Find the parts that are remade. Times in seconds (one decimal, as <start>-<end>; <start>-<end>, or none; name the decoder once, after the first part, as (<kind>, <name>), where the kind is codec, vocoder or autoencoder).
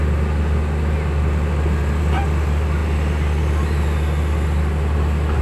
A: none